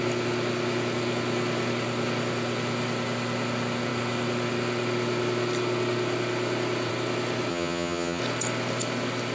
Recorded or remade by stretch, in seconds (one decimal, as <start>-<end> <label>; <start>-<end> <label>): 0.0-7.5 recorded; 7.5-8.2 remade; 8.2-9.3 recorded